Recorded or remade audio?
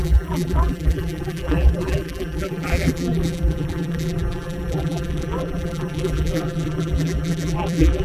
remade